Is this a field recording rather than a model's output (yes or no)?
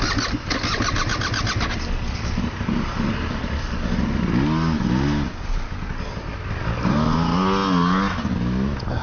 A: yes